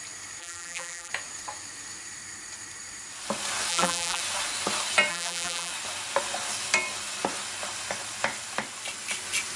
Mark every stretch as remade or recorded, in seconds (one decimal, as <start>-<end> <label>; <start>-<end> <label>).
0.0-0.4 recorded; 0.4-1.1 remade; 1.1-3.7 recorded; 3.7-4.2 remade; 4.2-5.1 recorded; 5.1-5.7 remade; 5.7-9.6 recorded